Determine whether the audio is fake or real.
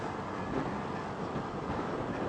real